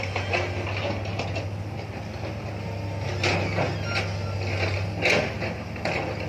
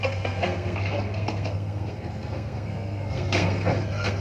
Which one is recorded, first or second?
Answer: first